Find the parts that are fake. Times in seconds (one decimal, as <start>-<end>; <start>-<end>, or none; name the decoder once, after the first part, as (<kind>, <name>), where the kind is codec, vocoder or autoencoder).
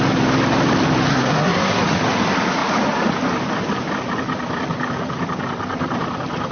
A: 1.1-1.8 (codec, SNAC)